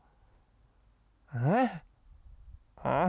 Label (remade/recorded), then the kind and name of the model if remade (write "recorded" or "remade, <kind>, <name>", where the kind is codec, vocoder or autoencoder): recorded